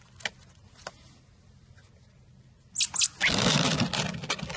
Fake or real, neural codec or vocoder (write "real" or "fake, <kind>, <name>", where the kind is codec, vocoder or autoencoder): real